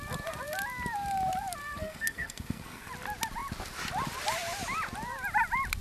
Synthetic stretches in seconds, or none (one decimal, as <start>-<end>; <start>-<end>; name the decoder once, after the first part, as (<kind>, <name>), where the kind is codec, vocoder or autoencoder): 1.6-2.9 (codec, SNAC)